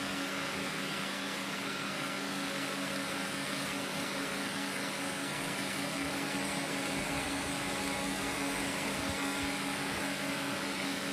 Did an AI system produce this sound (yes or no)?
yes